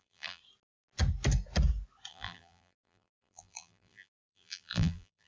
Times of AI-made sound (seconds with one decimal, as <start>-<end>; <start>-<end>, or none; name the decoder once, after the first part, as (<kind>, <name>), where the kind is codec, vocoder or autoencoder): 0.0-0.4 (vocoder, BigVGAN v2); 2.1-5.3